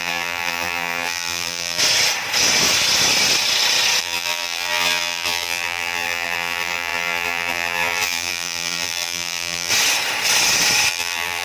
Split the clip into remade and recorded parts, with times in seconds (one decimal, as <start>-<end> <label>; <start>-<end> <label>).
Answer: 0.0-1.8 remade; 1.8-4.0 recorded; 4.0-9.7 remade; 9.7-10.9 recorded; 10.9-11.4 remade